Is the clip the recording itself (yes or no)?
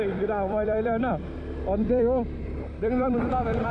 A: no